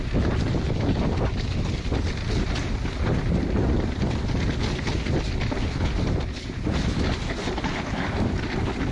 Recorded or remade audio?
recorded